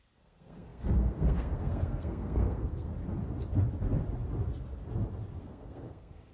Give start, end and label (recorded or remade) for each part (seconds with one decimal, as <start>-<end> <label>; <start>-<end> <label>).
0.0-2.9 remade; 2.9-5.4 recorded; 5.4-6.3 remade